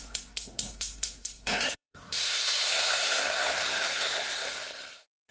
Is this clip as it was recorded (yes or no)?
no